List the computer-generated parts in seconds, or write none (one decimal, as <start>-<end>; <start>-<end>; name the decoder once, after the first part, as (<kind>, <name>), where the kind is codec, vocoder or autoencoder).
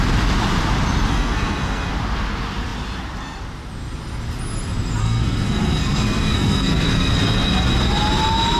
1.1-1.9 (codec, SNAC); 5.0-7.1